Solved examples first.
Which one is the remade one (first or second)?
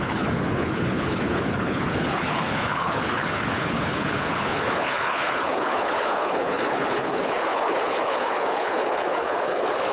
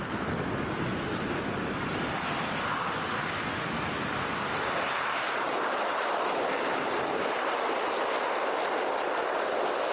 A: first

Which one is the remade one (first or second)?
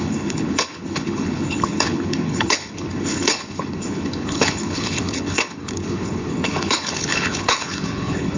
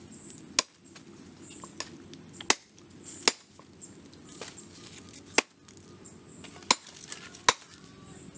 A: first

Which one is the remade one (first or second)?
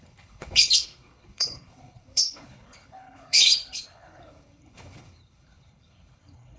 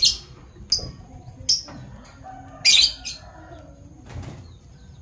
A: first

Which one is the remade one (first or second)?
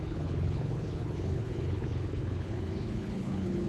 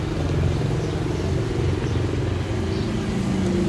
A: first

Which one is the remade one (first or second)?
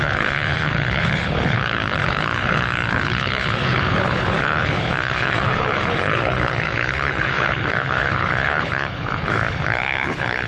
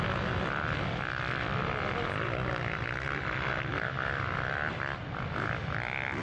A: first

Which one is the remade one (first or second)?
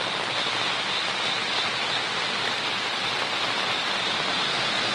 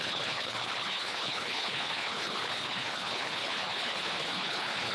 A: second